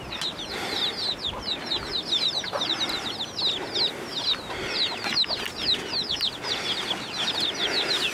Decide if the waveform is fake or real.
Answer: real